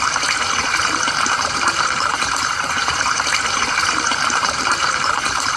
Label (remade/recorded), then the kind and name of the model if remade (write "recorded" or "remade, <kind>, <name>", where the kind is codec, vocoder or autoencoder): remade, vocoder, BigVGAN v2